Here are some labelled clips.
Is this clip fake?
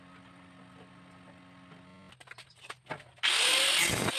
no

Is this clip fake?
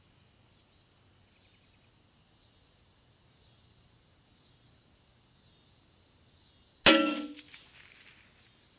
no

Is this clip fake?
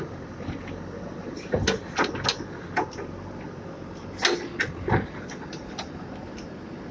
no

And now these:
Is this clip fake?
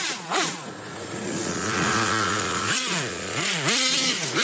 yes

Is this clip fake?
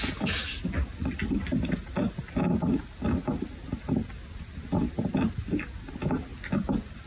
no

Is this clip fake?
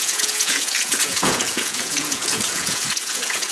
yes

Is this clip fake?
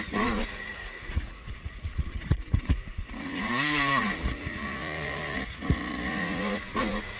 yes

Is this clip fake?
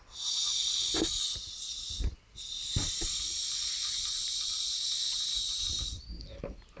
no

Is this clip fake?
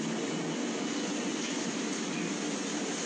no